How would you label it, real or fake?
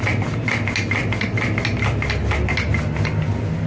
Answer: real